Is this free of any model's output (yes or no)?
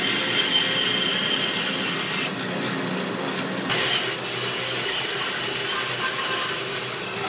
yes